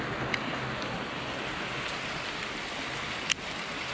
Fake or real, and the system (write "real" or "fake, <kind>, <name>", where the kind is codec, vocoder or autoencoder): real